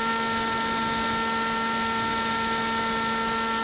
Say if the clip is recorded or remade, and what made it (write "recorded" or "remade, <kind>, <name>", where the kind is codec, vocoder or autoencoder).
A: recorded